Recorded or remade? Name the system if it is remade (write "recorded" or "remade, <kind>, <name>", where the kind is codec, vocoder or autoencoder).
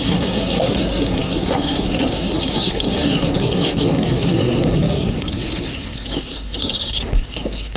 remade, codec, SNAC